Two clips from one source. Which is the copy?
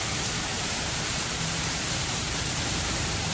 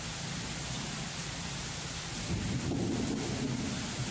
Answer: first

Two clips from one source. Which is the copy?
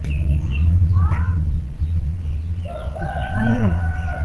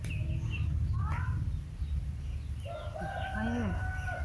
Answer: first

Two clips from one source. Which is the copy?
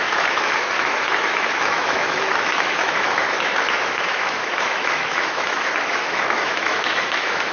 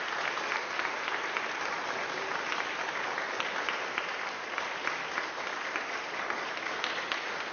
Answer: first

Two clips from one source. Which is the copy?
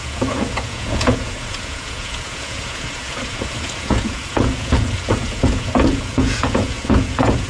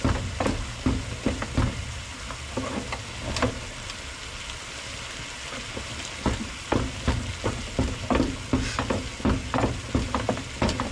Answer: first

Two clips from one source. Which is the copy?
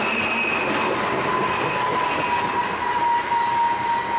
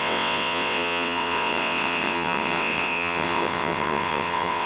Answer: second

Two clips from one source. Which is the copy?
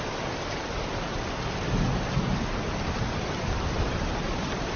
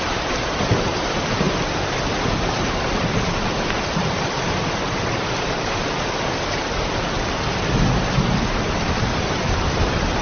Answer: second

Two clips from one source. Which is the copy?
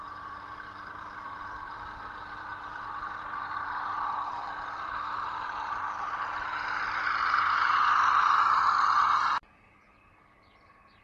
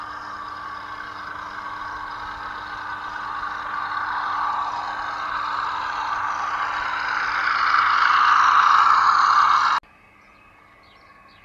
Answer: first